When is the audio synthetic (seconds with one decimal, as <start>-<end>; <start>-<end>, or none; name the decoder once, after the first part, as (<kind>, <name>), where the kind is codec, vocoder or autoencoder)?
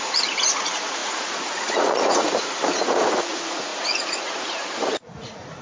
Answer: 0.0-5.6 (vocoder, Vocos)